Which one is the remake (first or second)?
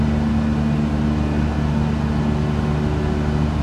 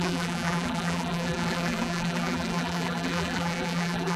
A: second